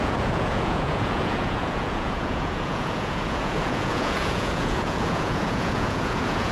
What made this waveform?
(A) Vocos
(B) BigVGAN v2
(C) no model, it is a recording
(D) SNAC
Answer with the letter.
A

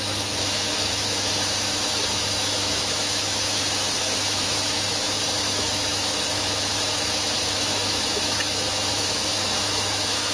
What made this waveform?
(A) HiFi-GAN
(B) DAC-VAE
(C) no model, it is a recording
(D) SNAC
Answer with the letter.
B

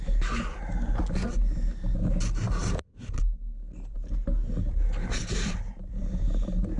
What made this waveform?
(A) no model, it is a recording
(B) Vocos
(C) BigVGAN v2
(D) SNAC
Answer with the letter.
A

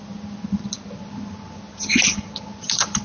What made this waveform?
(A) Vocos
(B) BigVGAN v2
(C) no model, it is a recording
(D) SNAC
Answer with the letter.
C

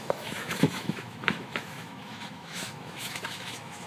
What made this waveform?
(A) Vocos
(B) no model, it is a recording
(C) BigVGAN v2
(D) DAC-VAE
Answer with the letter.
D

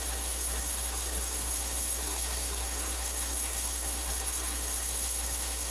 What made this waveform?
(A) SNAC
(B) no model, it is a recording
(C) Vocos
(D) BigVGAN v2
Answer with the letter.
A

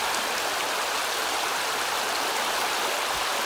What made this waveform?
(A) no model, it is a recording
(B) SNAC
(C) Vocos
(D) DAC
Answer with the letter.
A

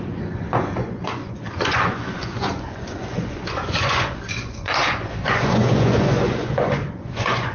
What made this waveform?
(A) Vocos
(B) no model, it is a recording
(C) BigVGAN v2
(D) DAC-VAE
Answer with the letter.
A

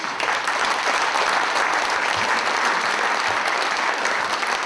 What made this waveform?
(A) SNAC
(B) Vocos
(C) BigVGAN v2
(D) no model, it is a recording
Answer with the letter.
C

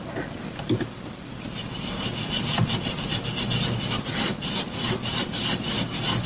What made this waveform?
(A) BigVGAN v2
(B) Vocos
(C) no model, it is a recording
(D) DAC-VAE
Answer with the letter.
A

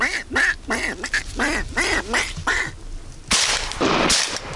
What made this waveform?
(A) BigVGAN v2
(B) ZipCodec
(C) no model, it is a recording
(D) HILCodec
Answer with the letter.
C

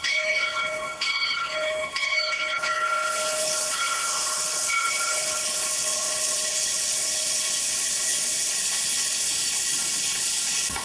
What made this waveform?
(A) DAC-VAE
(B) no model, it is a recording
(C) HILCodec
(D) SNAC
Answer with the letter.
C